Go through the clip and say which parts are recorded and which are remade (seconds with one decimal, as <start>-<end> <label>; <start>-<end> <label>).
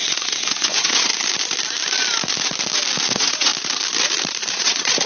0.0-1.1 remade; 1.1-3.1 recorded; 3.1-3.5 remade; 3.5-4.5 recorded; 4.5-5.1 remade